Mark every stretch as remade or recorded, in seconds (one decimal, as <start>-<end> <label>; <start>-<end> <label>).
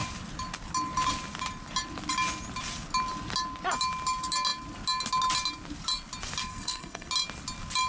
0.0-6.4 recorded; 6.4-7.1 remade; 7.1-7.9 recorded